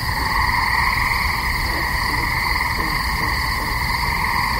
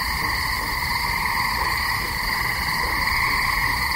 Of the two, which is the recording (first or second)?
first